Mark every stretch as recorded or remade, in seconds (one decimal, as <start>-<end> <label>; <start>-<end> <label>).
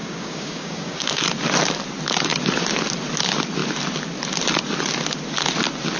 0.0-1.2 remade; 1.2-6.0 recorded